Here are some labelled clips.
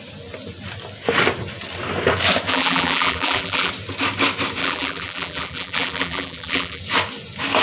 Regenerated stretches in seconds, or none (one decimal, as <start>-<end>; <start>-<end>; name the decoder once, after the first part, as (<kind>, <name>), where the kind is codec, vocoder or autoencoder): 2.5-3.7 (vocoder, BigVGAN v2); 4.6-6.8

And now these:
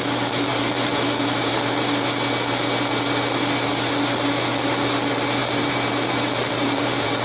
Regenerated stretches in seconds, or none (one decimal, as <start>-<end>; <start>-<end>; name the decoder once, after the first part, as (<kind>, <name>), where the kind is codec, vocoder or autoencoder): 0.5-1.7 (vocoder, BigVGAN v2); 5.4-6.1; 6.5-7.2

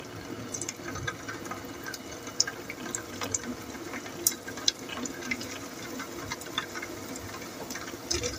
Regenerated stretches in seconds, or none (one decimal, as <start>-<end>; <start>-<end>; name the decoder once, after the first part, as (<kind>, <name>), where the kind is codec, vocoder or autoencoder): 2.3-3.1 (vocoder, BigVGAN v2)

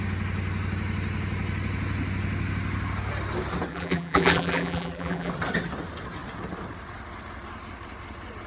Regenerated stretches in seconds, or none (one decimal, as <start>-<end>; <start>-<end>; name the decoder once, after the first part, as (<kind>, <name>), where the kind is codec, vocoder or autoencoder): 3.7-5.3 (vocoder, BigVGAN v2)

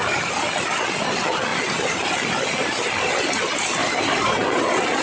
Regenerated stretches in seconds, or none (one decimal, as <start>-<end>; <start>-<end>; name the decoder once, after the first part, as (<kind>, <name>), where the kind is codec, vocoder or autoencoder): 3.8-4.6 (vocoder, BigVGAN v2)